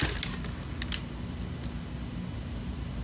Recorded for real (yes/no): yes